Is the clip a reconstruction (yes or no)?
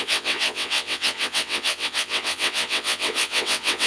yes